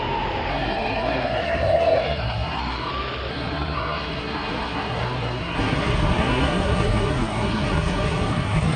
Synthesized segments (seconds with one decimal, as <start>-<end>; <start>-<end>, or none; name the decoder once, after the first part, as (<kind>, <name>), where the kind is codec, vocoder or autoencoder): 0.5-2.9 (codec, SNAC); 3.3-8.8